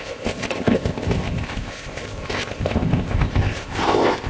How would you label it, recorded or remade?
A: remade